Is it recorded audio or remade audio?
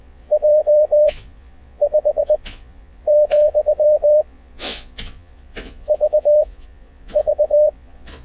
remade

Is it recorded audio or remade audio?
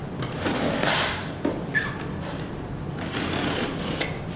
recorded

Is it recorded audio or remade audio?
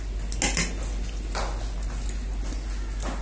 recorded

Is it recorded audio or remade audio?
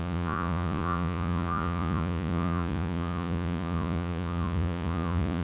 remade